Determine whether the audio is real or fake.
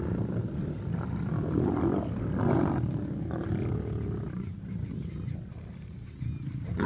real